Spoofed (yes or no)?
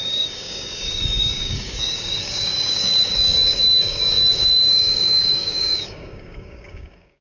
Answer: yes